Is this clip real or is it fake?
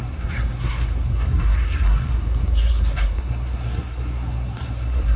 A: fake